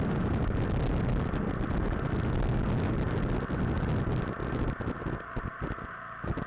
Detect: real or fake real